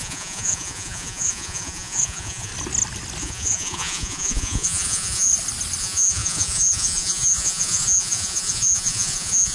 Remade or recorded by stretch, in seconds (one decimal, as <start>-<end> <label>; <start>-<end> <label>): 0.0-2.5 remade; 2.5-3.2 recorded; 3.2-5.3 remade; 5.3-5.8 recorded; 5.8-9.5 remade